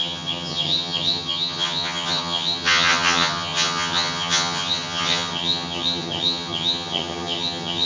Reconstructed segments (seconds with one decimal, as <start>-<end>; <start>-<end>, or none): 0.0-7.9